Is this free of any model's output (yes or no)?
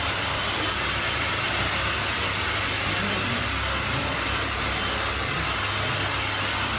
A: yes